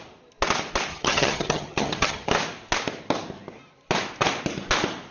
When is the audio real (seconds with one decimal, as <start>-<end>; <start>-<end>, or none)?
0.0-0.9; 2.3-5.1